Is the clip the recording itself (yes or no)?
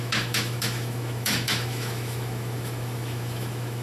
no